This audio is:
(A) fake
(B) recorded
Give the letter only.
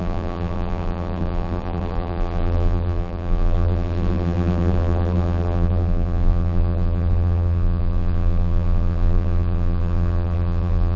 A